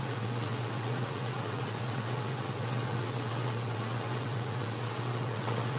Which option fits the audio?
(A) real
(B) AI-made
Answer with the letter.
B